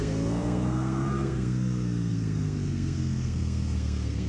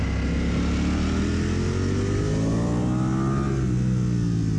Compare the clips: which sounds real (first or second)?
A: second